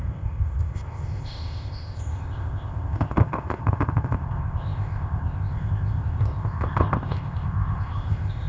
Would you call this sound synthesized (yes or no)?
yes